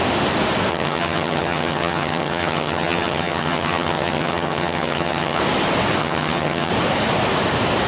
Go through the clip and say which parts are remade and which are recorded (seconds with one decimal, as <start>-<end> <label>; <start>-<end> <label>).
0.0-0.7 recorded; 0.7-5.4 remade; 5.4-6.0 recorded; 6.0-6.7 remade; 6.7-7.9 recorded